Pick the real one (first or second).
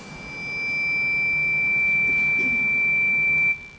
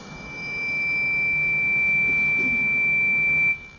first